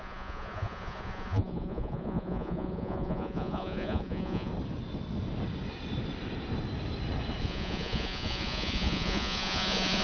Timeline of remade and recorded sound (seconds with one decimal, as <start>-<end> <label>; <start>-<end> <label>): 0.0-4.5 remade; 4.5-7.4 recorded; 7.4-10.0 remade